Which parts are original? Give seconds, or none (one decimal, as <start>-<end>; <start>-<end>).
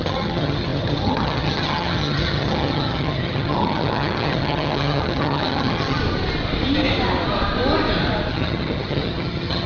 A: 6.0-8.3